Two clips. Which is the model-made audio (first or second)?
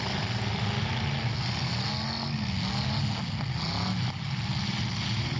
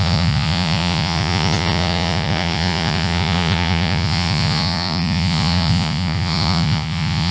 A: second